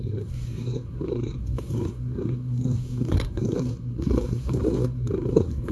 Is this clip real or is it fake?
fake